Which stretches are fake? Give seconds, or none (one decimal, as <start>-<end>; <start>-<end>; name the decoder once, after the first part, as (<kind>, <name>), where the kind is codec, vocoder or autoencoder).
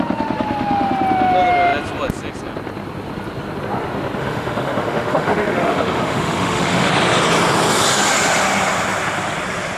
4.2-6.9 (autoencoder, DAC-VAE)